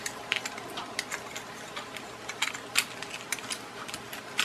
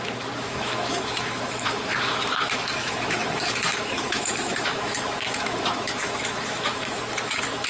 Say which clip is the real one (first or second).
first